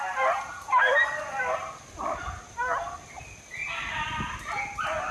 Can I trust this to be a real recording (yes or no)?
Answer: yes